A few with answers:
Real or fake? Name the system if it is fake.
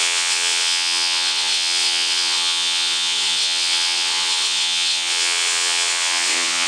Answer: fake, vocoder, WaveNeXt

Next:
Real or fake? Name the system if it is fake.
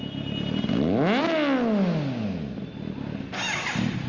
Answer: real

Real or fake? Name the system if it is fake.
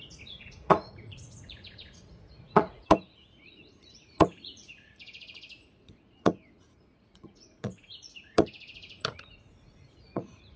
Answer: fake, vocoder, Vocos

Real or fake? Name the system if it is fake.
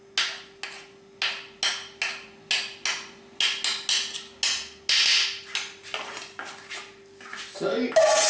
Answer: real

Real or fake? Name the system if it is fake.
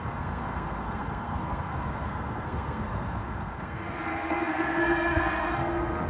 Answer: fake, codec, SNAC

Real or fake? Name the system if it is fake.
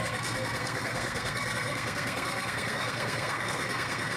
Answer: fake, codec, SNAC